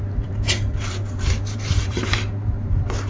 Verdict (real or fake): fake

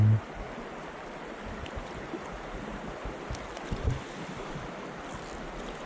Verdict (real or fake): real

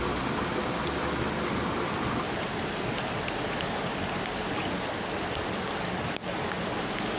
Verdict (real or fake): real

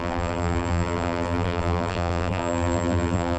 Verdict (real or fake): fake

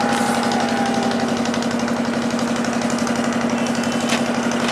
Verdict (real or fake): real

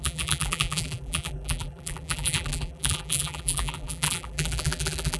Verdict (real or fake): fake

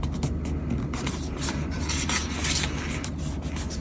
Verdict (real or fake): real